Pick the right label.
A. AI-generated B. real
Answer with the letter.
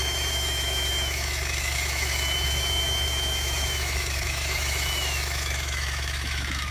A